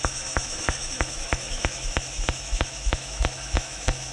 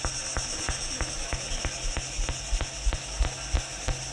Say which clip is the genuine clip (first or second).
second